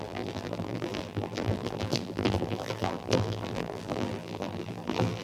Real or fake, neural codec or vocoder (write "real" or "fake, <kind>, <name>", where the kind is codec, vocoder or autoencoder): fake, vocoder, BigVGAN v2